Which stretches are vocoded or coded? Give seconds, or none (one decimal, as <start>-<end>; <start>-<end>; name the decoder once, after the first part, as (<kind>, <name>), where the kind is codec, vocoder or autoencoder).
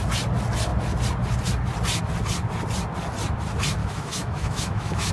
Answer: 3.8-5.1 (autoencoder, DAC-VAE)